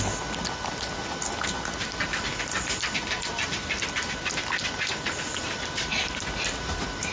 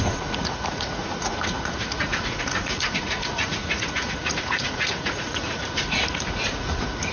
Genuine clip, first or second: first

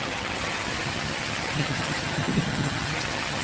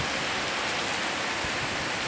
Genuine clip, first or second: second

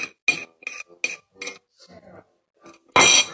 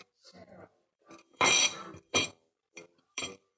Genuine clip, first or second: first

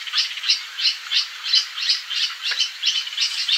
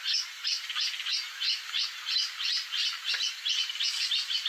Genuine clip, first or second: second